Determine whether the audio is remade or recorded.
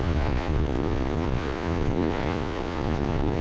remade